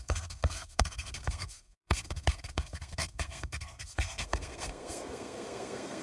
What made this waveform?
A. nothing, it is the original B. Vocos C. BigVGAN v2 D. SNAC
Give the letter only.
D